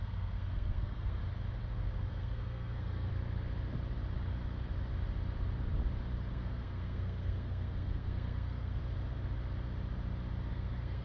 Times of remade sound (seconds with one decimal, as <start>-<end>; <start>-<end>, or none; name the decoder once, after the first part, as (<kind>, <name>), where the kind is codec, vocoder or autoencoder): 0.0-1.2 (codec, SNAC); 2.1-3.1; 6.3-8.8; 10.5-11.0